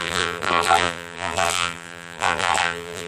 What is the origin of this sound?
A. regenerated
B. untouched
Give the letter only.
A